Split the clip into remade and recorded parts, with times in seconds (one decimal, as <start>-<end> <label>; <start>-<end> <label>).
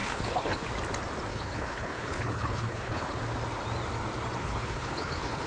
0.0-0.7 remade; 0.7-1.3 recorded; 1.3-3.2 remade; 3.2-4.4 recorded; 4.4-5.5 remade